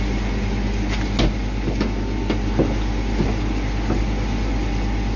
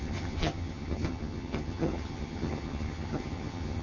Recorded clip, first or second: first